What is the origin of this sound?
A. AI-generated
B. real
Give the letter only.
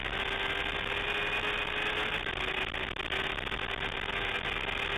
B